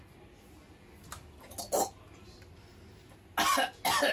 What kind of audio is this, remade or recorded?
recorded